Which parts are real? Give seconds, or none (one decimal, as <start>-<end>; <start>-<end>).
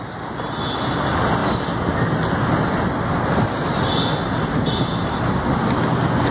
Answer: 0.0-6.3